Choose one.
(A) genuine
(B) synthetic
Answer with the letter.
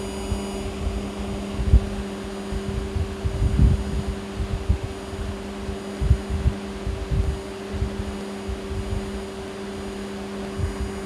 A